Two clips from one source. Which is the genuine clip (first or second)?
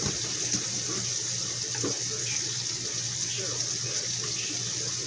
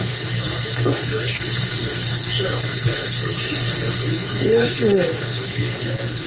first